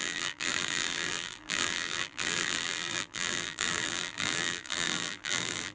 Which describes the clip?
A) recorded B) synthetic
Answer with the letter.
B